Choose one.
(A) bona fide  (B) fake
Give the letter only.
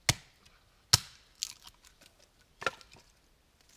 A